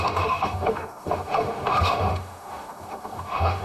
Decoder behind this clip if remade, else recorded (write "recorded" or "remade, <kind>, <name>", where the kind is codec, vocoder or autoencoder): remade, autoencoder, DAC-VAE